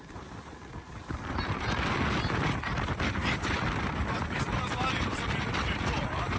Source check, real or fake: fake